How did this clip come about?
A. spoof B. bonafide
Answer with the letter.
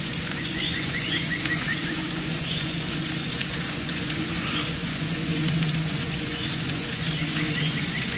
A